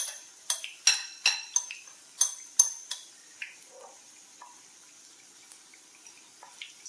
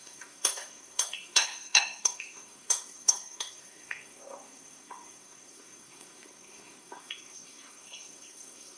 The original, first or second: first